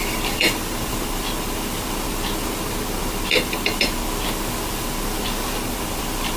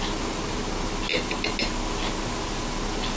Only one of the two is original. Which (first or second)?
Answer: second